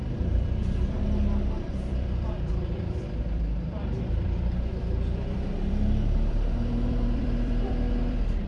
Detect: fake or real fake